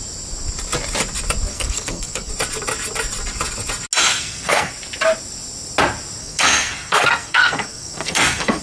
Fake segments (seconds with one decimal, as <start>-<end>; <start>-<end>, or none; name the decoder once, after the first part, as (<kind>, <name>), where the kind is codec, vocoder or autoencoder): 1.5-2.3 (codec, SNAC); 4.0-4.7; 6.2-8.6